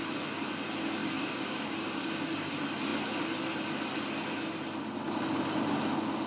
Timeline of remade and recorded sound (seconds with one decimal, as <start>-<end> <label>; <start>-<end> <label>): 0.0-1.0 recorded; 1.0-2.5 remade; 2.5-6.3 recorded